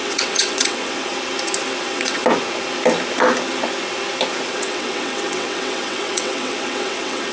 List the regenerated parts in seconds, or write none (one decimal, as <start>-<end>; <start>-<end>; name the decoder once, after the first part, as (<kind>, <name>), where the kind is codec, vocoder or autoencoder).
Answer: 0.0-1.1 (vocoder, WaveNeXt); 1.8-2.2; 4.5-7.3